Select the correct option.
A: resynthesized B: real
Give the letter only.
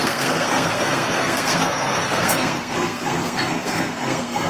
A